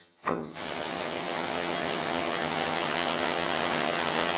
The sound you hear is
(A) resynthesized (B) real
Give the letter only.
A